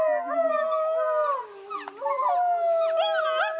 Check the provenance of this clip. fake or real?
real